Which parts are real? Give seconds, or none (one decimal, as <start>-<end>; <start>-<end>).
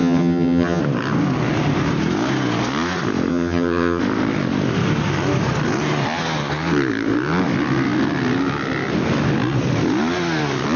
0.8-3.3; 4.0-10.8